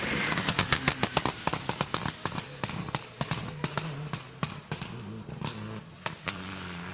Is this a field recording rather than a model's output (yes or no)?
yes